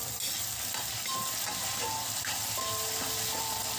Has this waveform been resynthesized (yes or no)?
yes